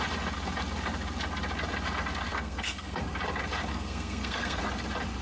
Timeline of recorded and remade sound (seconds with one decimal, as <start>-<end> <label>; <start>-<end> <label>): 0.0-2.3 recorded; 2.3-3.0 remade; 3.0-3.7 recorded; 3.7-4.6 remade; 4.6-5.2 recorded